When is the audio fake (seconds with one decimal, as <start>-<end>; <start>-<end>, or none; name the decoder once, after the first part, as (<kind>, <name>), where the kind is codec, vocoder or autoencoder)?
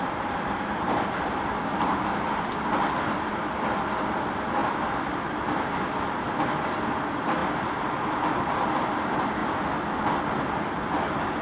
0.0-7.4 (vocoder, BigVGAN v2); 8.7-9.4; 10.1-11.4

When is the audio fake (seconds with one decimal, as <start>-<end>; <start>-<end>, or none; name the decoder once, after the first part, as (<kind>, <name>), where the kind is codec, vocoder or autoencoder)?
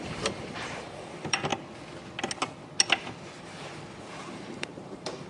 0.0-1.5 (vocoder, BigVGAN v2); 3.4-5.3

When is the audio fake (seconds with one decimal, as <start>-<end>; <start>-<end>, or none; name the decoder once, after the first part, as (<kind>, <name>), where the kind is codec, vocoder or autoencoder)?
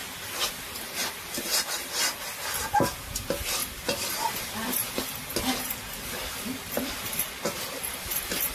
none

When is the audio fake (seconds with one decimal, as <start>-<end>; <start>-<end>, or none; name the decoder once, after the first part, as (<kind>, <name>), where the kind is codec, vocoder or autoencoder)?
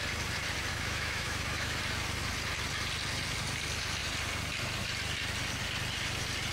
0.7-1.8 (autoencoder, DAC-VAE)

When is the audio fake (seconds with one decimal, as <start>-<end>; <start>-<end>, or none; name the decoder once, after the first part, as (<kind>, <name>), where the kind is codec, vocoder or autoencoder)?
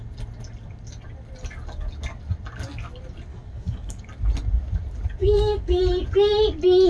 3.3-4.0 (codec, DAC); 5.2-5.8